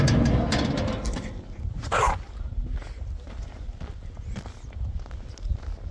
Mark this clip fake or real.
real